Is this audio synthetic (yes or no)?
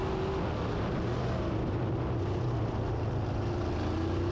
no